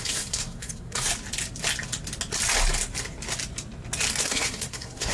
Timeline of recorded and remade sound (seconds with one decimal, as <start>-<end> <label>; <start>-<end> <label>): 0.0-1.1 remade; 1.1-4.2 recorded; 4.2-5.1 remade